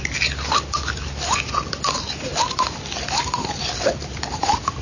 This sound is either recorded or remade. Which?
recorded